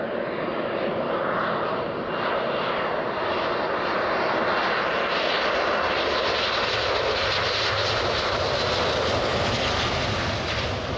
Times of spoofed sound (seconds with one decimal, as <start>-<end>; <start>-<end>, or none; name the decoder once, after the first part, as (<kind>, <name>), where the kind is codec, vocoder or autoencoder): none